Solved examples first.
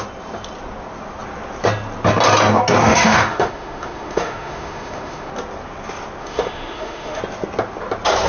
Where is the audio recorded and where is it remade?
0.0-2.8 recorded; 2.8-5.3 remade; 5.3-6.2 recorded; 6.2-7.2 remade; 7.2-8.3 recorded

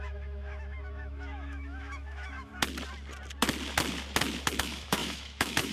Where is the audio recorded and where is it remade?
0.0-2.5 remade; 2.5-4.6 recorded; 4.6-5.7 remade

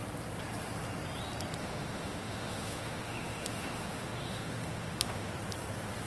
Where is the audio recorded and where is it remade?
0.0-1.6 recorded; 1.6-5.3 remade; 5.3-6.1 recorded

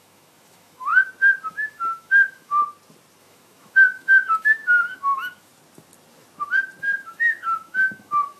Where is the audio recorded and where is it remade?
0.0-0.9 remade; 0.9-1.5 recorded; 1.5-2.6 remade; 2.6-3.2 recorded; 3.2-5.5 remade; 5.5-6.8 recorded; 6.8-8.4 remade